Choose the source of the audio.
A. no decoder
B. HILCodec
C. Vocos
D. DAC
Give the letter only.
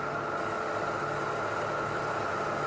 A